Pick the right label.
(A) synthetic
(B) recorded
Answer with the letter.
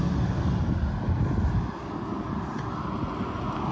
B